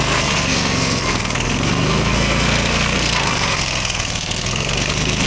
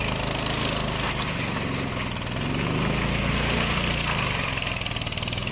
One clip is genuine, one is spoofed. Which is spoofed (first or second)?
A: first